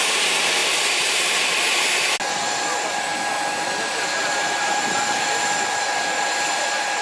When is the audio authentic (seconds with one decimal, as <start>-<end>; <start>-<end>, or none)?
0.0-7.0